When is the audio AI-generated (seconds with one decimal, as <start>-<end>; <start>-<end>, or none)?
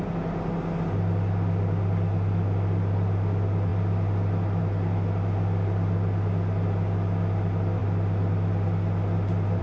none